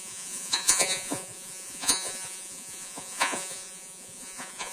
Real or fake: fake